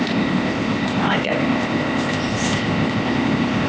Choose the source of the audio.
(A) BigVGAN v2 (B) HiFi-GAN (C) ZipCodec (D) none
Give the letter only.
C